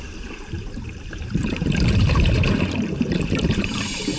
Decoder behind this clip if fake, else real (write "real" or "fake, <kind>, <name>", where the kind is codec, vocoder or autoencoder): fake, vocoder, BigVGAN v2